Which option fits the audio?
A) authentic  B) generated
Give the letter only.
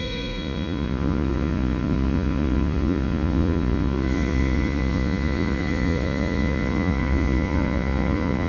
B